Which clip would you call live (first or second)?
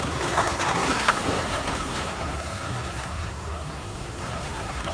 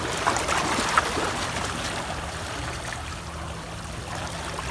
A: second